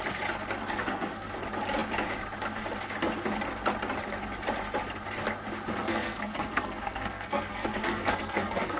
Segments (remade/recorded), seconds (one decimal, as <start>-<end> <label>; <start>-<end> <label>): 0.0-0.8 recorded; 0.8-1.3 remade; 1.3-5.7 recorded; 5.7-8.8 remade